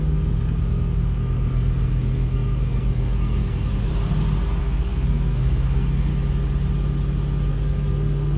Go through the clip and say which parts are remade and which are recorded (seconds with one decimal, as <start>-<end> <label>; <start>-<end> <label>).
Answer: 0.0-3.9 remade; 3.9-4.6 recorded; 4.6-6.1 remade; 6.1-7.5 recorded; 7.5-8.4 remade